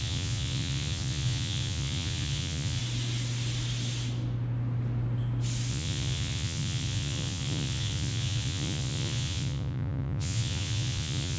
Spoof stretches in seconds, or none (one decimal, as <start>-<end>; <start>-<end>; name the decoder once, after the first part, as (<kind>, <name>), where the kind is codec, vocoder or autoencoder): 0.0-2.8 (vocoder, Vocos); 5.7-11.4